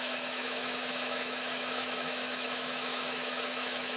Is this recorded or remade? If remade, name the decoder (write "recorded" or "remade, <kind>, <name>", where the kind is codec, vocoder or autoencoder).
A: remade, autoencoder, DAC-VAE